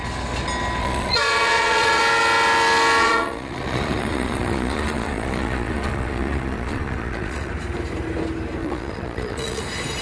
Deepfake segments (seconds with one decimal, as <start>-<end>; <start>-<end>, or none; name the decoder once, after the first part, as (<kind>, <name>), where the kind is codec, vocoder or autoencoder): 0.8-2.0 (vocoder, Vocos); 3.0-7.5; 8.6-9.6